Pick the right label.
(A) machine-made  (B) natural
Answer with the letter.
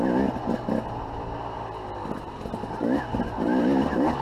B